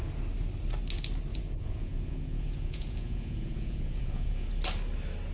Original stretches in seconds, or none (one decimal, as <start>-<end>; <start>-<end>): 0.0-1.3; 4.5-5.3